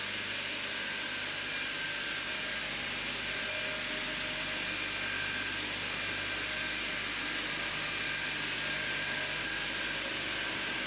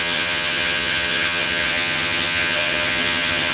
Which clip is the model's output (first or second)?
second